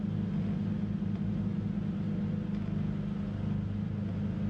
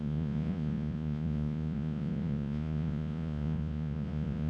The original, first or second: first